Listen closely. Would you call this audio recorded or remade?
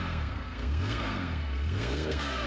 remade